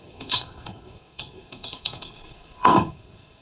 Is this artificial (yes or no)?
yes